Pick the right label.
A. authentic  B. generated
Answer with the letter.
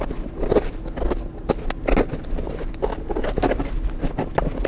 A